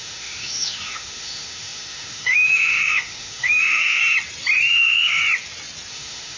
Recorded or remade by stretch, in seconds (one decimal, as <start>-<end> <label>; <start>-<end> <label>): 0.0-4.0 remade; 4.0-4.7 recorded; 4.7-5.2 remade; 5.2-5.9 recorded; 5.9-6.4 remade